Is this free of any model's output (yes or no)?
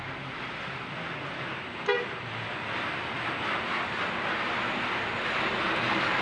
yes